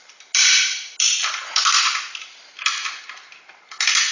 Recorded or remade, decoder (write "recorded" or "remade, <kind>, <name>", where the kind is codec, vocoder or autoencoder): recorded